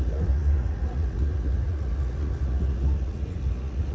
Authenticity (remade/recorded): remade